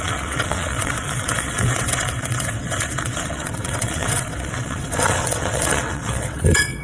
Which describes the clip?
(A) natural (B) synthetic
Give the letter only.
B